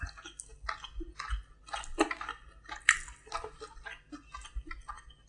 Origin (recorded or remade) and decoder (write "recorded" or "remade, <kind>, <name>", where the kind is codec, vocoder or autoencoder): recorded